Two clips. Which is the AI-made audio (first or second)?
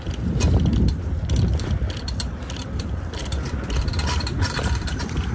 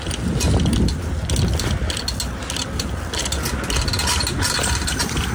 first